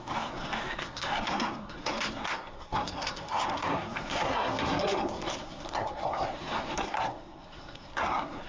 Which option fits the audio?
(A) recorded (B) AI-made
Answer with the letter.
B